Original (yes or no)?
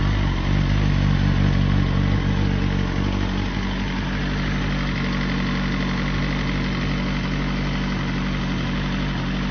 yes